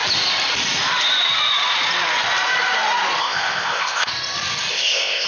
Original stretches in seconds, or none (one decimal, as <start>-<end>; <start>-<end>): 0.0-3.2; 4.1-4.7